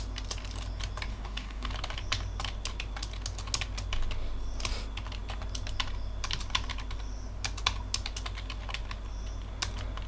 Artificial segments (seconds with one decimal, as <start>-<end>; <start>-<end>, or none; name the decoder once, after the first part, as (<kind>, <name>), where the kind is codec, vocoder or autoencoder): 1.1-1.7 (codec, DAC)